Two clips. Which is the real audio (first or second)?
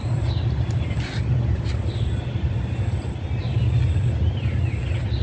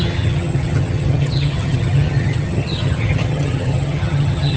first